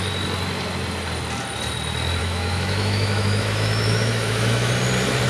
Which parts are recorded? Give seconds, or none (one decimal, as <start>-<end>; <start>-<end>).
0.0-2.2; 4.7-5.3